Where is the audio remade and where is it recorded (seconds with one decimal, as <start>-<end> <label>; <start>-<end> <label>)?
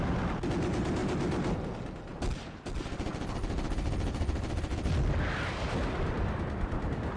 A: 0.0-7.2 recorded